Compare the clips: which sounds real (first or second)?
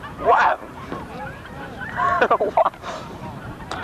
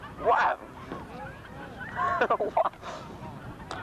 second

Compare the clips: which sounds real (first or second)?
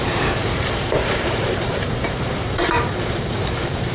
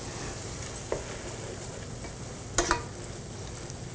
second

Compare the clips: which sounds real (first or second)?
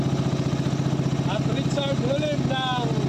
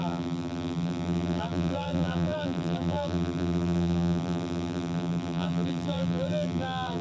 first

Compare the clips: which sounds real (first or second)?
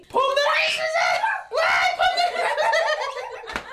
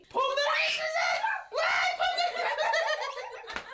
first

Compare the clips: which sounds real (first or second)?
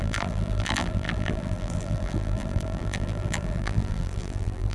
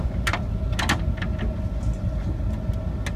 second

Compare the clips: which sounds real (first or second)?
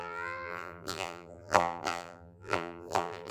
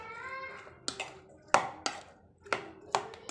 second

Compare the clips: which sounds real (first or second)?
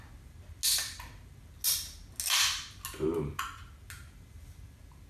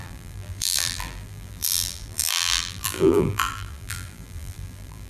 first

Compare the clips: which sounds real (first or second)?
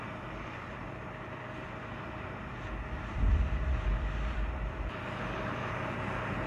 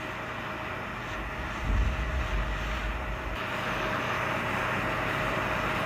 second